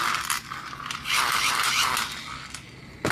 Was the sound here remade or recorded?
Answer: recorded